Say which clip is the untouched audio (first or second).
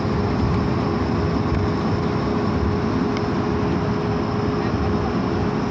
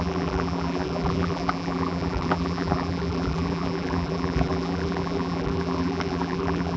first